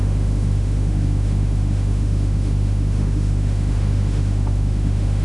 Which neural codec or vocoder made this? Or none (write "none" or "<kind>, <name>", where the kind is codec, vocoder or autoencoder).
autoencoder, DAC-VAE